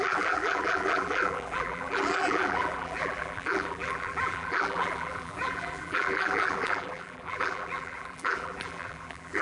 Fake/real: fake